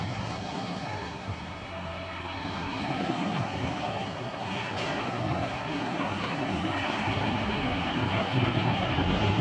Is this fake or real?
fake